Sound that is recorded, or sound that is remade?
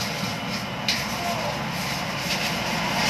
recorded